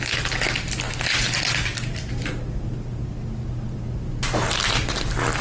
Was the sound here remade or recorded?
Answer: recorded